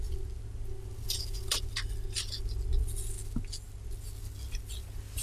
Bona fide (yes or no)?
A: yes